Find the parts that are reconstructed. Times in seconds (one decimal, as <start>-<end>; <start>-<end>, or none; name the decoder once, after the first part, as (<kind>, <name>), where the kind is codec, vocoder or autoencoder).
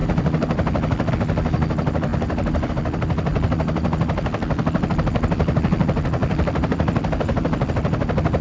3.3-4.9 (vocoder, BigVGAN v2); 6.2-7.7